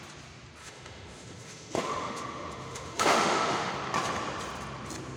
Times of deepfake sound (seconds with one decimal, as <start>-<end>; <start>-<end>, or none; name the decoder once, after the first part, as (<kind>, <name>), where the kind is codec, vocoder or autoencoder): 0.6-3.7 (autoencoder, DAC-VAE)